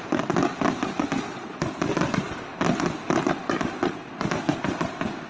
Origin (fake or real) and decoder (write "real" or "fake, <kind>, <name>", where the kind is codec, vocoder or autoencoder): real